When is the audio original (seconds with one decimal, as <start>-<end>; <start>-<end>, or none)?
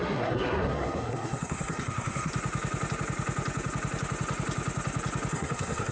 2.3-5.3